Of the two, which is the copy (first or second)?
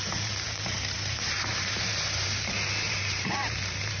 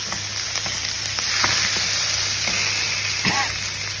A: first